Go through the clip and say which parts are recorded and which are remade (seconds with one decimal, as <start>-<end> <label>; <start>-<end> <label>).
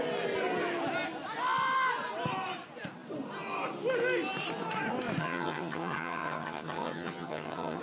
0.0-5.2 recorded; 5.2-7.8 remade